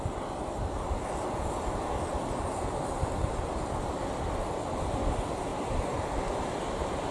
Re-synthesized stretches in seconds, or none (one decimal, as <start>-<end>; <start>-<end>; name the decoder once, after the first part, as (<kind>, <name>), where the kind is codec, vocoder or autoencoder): none